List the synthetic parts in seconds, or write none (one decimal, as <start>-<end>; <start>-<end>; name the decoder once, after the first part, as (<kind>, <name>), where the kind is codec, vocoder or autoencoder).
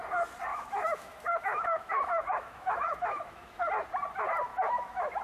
0.5-3.6 (autoencoder, DAC-VAE); 4.5-5.2